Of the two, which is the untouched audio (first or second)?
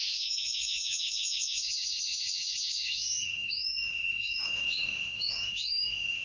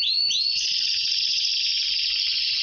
second